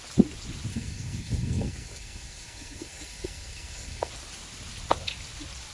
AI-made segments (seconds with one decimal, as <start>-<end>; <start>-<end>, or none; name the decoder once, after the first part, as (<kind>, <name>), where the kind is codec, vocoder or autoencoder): 0.7-4.1 (codec, SNAC)

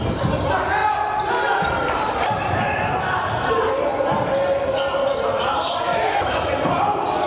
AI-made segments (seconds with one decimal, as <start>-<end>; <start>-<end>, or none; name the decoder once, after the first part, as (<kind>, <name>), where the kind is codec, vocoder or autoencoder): none